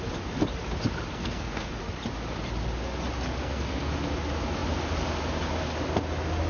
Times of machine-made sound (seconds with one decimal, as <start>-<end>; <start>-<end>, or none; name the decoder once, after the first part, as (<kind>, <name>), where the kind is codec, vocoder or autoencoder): 1.1-1.8 (codec, SNAC); 3.4-3.9